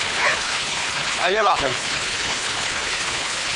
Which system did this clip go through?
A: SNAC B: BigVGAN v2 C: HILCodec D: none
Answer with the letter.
C